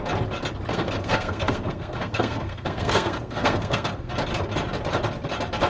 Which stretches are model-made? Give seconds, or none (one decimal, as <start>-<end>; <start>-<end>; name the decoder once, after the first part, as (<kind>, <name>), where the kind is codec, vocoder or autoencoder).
0.7-4.1 (codec, SNAC)